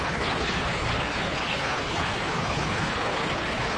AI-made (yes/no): yes